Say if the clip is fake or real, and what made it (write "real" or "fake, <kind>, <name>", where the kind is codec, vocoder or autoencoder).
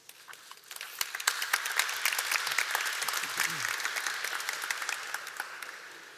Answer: real